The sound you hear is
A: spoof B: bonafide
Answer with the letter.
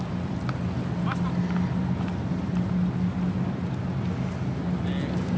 B